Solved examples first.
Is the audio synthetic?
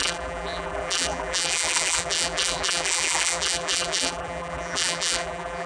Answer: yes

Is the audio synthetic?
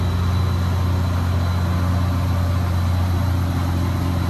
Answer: no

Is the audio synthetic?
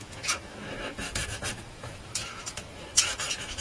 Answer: yes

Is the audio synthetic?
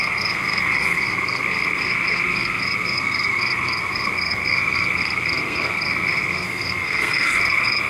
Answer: yes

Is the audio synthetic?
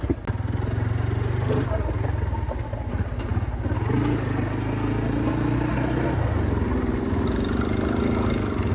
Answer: no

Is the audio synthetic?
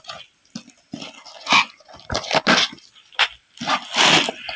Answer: no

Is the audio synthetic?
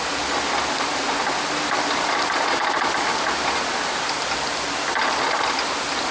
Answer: no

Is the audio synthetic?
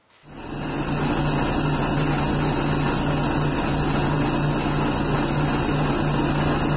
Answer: no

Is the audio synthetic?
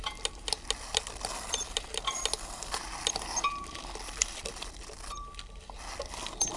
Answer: no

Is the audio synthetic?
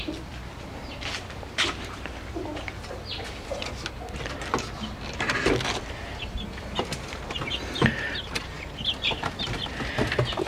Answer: no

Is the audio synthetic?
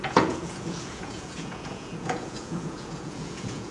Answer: yes